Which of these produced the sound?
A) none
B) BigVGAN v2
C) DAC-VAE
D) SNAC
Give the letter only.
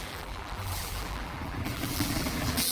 B